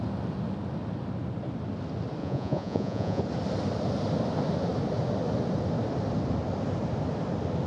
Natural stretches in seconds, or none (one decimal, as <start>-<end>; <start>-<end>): 0.0-2.2; 3.2-7.7